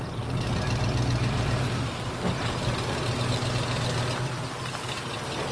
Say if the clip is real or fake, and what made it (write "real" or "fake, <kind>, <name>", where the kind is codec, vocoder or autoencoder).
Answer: real